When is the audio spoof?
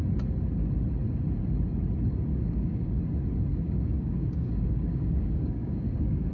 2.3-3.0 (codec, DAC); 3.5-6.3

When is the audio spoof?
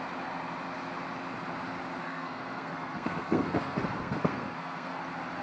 2.0-5.0 (codec, SNAC)